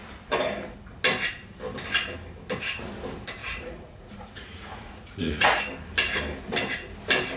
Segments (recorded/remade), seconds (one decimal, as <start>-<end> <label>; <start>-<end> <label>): 0.0-3.4 recorded; 3.4-5.6 remade; 5.6-7.4 recorded